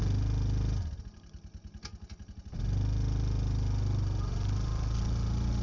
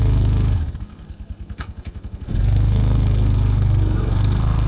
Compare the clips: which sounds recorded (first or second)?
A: first